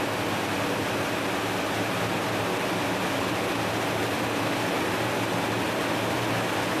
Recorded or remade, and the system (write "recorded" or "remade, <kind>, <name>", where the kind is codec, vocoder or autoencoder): recorded